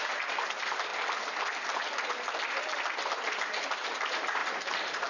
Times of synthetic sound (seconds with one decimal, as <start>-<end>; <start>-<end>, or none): 0.0-0.9; 3.0-5.1